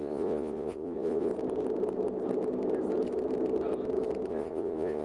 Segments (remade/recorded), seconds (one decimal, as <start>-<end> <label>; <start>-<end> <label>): 0.0-1.3 remade; 1.3-4.3 recorded; 4.3-5.0 remade